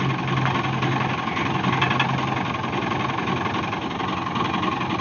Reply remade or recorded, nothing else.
recorded